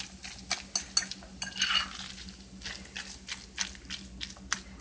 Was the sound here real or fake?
real